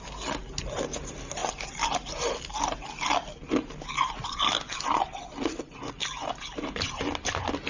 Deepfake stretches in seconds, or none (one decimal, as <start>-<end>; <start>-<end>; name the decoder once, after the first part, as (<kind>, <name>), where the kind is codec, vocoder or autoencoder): none